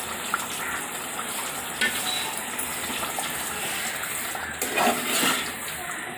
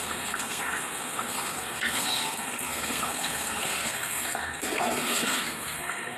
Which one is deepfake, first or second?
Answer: second